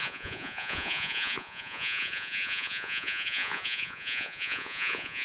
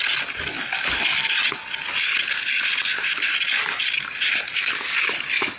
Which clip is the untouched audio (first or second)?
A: second